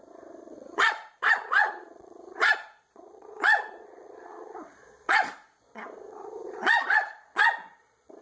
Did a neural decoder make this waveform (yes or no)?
yes